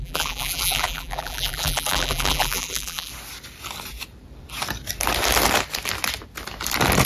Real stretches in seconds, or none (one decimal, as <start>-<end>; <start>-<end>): 3.1-7.1